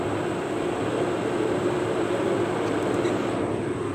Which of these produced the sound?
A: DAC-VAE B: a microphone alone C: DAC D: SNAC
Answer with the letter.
B